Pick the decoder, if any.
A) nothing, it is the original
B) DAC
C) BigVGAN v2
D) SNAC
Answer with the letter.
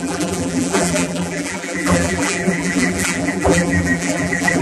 C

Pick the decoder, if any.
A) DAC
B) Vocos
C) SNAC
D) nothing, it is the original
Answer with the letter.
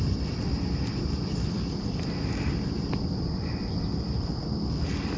D